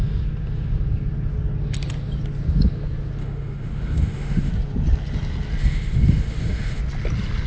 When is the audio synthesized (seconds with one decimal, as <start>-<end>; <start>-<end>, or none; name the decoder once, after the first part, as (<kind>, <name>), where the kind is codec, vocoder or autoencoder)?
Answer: 3.2-4.5 (autoencoder, DAC-VAE); 5.6-6.8